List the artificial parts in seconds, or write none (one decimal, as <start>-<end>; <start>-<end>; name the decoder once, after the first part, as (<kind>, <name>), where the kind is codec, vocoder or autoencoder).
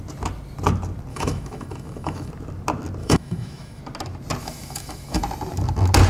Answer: 1.1-2.3 (autoencoder, DAC-VAE); 3.0-3.8; 4.4-5.2